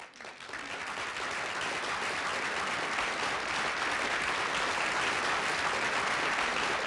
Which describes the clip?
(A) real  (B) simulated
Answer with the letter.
A